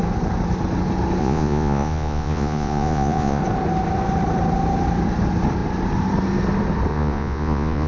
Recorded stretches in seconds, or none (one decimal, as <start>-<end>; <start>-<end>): 0.0-1.2; 3.4-6.9